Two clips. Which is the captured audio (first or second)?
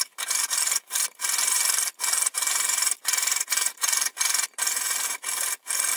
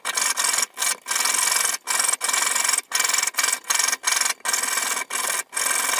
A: second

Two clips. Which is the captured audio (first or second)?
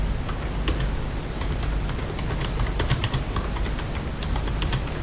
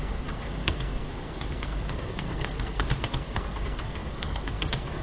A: first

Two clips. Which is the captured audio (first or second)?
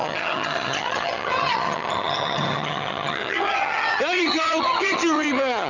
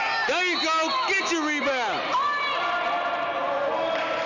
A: second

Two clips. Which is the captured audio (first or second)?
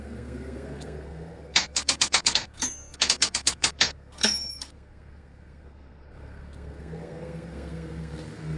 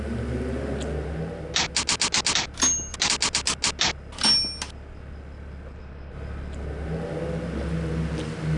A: second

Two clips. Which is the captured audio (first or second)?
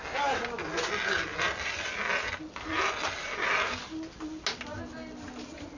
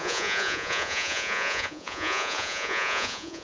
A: first